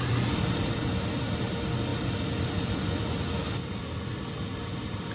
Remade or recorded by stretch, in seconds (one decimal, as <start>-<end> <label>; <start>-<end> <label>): 0.0-5.1 recorded